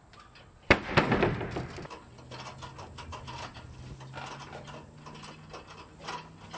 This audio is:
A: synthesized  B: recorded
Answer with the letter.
B